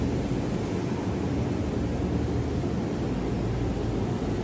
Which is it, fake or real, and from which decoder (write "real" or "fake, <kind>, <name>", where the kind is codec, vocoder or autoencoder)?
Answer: real